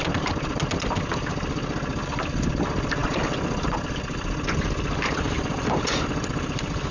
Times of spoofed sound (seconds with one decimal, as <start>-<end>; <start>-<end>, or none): none